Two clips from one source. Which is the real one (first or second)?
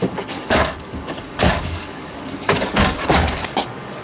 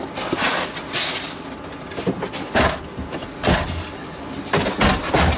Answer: second